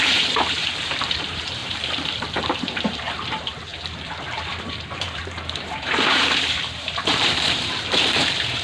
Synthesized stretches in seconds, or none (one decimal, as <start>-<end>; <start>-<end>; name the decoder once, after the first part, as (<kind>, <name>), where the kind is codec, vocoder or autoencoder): 0.0-8.6 (vocoder, BigVGAN v2)